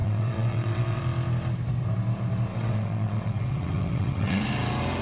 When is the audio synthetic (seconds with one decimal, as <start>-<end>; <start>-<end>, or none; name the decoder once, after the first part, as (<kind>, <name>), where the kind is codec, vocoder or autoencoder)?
0.0-1.0 (vocoder, WaveNeXt); 2.5-4.4

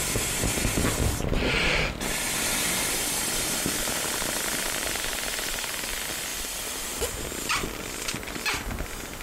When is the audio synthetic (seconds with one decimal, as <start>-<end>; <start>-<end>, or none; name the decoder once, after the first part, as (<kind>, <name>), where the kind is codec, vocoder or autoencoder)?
1.6-5.7 (vocoder, BigVGAN v2)

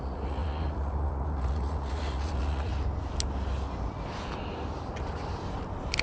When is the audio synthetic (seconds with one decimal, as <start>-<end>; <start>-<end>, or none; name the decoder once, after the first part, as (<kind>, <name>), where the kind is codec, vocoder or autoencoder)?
0.0-2.7 (vocoder, Vocos)

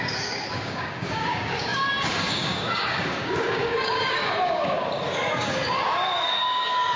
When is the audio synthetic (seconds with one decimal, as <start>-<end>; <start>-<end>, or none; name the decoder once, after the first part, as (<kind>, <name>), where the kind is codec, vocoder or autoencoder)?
0.0-7.0 (codec, DAC)

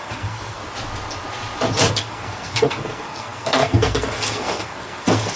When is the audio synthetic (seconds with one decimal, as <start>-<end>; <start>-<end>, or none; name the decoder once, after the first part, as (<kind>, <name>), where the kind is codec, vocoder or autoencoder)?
0.0-0.6 (codec, SNAC); 1.9-5.4

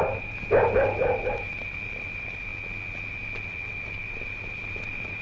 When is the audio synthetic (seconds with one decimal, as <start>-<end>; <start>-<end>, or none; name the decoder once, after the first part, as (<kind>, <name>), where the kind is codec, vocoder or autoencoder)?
0.0-2.5 (vocoder, BigVGAN v2); 3.1-5.2